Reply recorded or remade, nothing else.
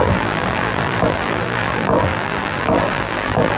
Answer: remade